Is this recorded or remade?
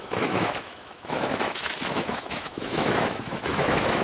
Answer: remade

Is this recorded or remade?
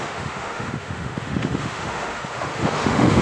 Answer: remade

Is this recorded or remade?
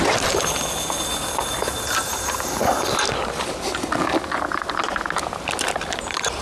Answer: recorded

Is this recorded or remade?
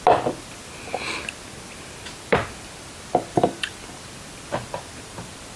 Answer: recorded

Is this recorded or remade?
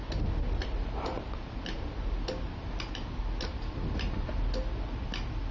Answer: recorded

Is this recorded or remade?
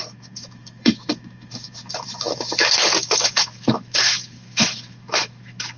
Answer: remade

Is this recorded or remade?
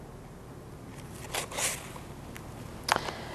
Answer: recorded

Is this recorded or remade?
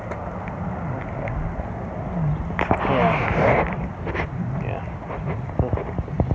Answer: recorded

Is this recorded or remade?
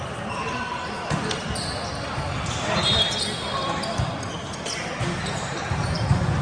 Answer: recorded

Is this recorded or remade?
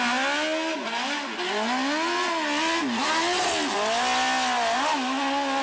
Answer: recorded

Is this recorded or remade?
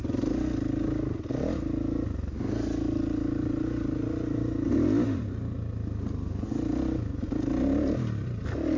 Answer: recorded